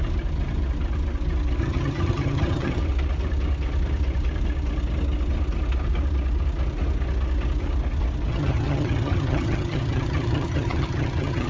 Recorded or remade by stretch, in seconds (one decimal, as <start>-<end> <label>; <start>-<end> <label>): 0.0-1.6 recorded; 1.6-2.8 remade; 2.8-8.3 recorded; 8.3-11.5 remade